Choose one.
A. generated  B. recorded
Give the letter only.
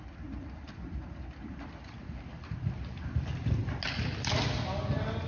B